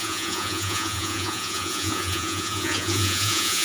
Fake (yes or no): yes